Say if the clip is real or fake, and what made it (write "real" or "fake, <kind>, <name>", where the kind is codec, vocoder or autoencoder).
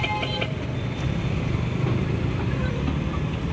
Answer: real